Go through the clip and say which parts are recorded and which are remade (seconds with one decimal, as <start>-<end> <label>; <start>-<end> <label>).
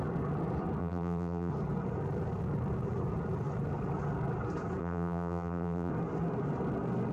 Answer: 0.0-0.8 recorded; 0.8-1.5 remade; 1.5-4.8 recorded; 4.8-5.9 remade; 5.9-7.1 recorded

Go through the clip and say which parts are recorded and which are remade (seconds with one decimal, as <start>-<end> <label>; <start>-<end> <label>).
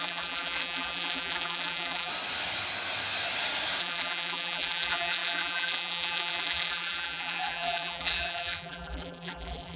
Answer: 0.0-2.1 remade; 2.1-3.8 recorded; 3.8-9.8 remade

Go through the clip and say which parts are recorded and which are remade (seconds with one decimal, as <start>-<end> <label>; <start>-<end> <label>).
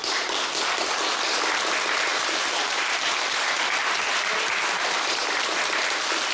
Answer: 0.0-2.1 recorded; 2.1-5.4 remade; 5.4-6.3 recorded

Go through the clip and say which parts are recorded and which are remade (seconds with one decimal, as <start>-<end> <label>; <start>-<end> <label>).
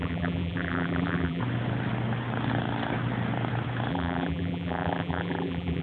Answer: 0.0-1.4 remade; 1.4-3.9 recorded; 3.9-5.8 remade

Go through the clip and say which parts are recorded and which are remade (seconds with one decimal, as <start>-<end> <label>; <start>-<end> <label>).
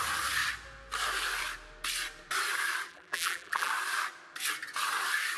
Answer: 0.0-2.9 recorded; 2.9-3.7 remade; 3.7-5.4 recorded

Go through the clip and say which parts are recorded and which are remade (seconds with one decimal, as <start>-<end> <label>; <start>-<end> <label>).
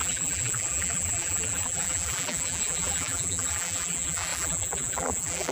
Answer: 0.0-5.5 remade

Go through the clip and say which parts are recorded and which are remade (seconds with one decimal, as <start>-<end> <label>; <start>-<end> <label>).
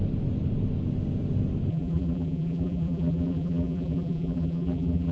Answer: 0.0-1.7 recorded; 1.7-5.1 remade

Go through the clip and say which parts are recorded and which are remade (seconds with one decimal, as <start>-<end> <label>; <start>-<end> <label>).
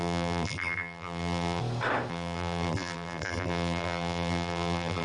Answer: 0.0-1.6 remade; 1.6-2.1 recorded; 2.1-5.0 remade